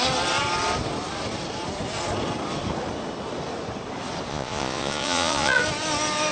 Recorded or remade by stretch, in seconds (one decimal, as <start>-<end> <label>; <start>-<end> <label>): 0.0-4.3 recorded; 4.3-5.6 remade; 5.6-6.3 recorded